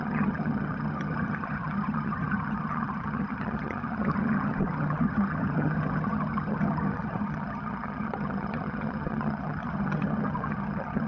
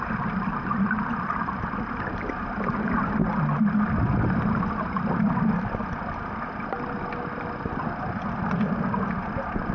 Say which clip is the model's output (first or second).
first